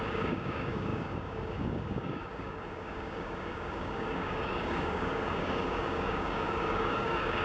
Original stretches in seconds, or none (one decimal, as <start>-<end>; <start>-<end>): none